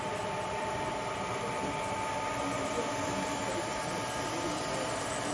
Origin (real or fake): real